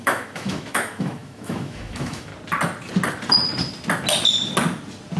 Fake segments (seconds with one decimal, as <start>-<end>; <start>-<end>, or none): 0.0-2.3